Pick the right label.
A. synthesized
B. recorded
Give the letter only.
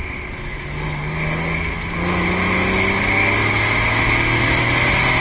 B